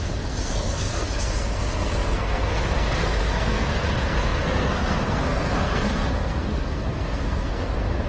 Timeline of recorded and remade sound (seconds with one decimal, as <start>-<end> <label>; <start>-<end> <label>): 0.0-8.1 remade